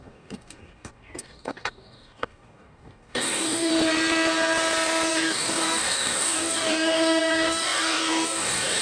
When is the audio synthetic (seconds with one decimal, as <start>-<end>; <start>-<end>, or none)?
0.0-3.7; 5.1-8.8